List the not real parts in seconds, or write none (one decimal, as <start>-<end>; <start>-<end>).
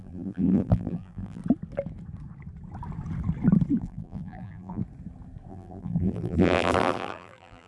0.0-1.4; 3.8-4.8; 5.5-7.7